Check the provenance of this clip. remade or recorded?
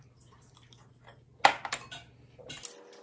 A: recorded